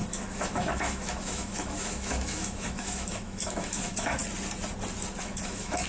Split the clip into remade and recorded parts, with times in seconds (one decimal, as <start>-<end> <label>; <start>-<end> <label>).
0.0-4.2 remade; 4.2-5.2 recorded; 5.2-5.9 remade